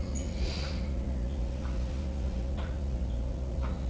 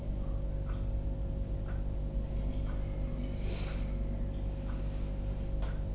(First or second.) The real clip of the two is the second